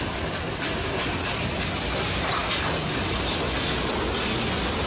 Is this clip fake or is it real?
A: real